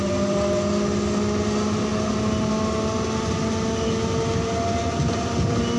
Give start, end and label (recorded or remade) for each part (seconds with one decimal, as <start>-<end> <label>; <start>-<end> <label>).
0.0-5.8 recorded

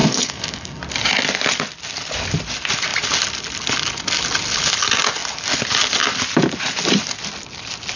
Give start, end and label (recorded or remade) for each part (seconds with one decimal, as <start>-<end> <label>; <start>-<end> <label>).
0.0-0.8 remade; 0.8-8.0 recorded

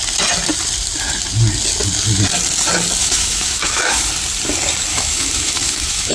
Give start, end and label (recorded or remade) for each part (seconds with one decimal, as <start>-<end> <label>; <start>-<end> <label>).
0.0-3.0 recorded; 3.0-4.1 remade; 4.1-4.9 recorded; 4.9-6.1 remade

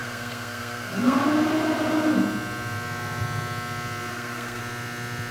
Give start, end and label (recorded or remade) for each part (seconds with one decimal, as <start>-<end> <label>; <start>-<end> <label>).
0.0-1.2 remade; 1.2-4.1 recorded; 4.1-4.6 remade; 4.6-5.3 recorded

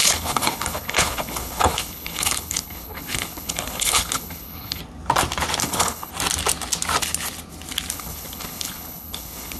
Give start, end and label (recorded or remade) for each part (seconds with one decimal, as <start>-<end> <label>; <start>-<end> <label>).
0.0-4.8 remade; 4.8-5.6 recorded; 5.6-6.1 remade; 6.1-7.9 recorded; 7.9-9.6 remade